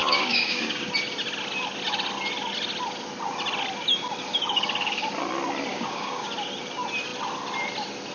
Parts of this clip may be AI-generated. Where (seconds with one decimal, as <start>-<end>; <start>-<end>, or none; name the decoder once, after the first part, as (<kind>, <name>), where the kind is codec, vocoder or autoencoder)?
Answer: 0.0-0.9 (codec, DAC); 5.7-6.3